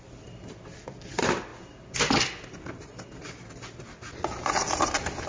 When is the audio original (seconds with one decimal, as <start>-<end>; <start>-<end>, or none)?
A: 1.5-4.7